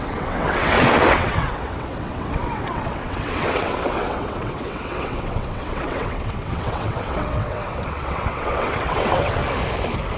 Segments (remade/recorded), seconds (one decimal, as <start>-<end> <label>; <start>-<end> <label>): 0.0-9.4 remade; 9.4-10.2 recorded